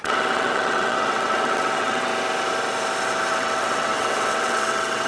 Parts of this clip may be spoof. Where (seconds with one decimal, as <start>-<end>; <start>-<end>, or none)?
0.0-2.1; 3.3-5.1